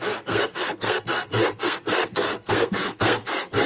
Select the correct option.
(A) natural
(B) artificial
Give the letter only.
B